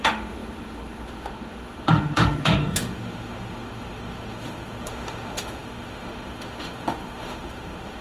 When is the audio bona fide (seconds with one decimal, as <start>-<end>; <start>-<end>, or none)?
none